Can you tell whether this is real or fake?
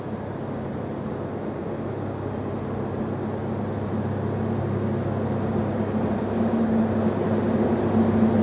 real